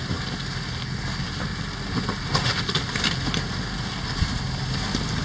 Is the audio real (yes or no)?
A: yes